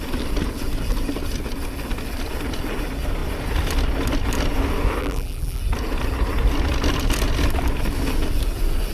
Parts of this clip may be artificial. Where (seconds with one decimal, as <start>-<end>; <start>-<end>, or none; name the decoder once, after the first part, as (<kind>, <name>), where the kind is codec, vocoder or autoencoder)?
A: 5.0-5.6 (vocoder, BigVGAN v2)